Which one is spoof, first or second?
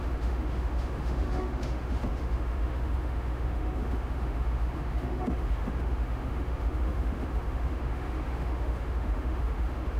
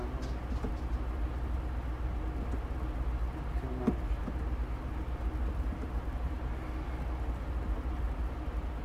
first